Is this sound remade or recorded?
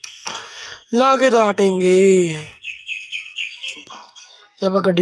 remade